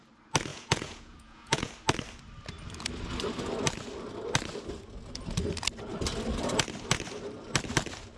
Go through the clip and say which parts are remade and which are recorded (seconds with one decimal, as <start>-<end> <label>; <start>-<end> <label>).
0.0-0.5 recorded; 0.5-1.7 remade; 1.7-8.2 recorded